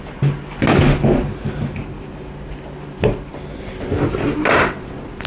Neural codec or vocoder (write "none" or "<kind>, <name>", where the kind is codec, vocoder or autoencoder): none